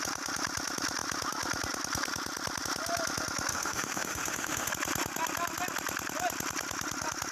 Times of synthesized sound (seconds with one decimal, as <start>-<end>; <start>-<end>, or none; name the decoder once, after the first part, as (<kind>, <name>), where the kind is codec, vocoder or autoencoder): 3.5-4.7 (autoencoder, DAC-VAE)